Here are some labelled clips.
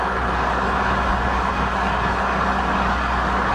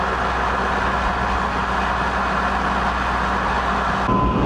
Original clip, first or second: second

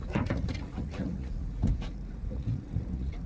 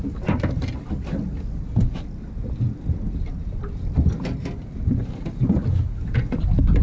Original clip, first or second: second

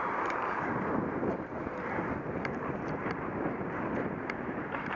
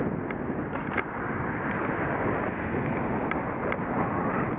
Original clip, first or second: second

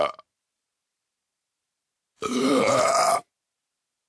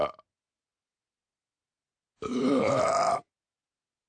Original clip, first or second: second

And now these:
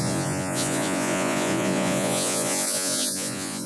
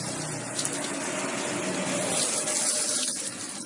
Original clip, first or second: second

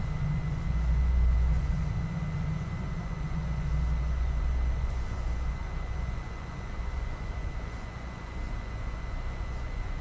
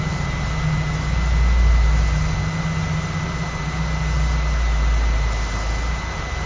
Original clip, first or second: second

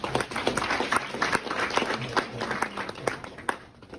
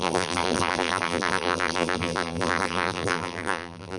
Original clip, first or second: first